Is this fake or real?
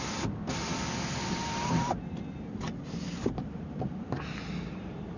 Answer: fake